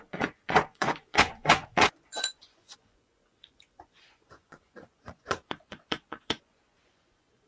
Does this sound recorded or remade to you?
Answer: remade